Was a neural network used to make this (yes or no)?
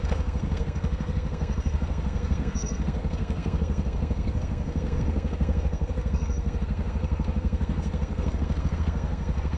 yes